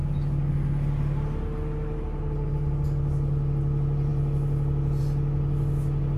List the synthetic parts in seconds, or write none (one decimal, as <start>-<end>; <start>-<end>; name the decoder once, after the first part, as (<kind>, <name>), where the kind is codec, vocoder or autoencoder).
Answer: none